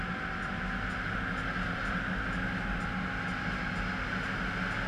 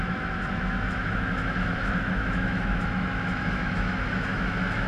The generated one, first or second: second